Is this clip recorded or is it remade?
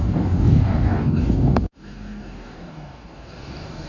remade